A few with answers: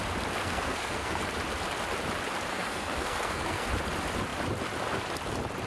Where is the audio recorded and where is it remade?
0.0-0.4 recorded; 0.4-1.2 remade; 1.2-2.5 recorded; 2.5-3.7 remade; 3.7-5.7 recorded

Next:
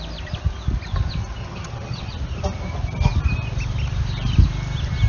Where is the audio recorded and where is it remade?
0.0-1.4 recorded; 1.4-2.1 remade; 2.1-5.1 recorded

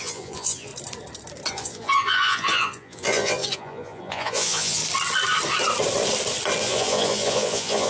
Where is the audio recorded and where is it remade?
0.0-0.7 remade; 0.7-1.5 recorded; 1.5-4.8 remade; 4.8-6.6 recorded; 6.6-7.9 remade

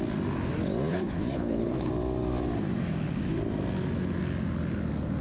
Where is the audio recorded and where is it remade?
0.0-0.9 recorded; 0.9-1.9 remade; 1.9-5.2 recorded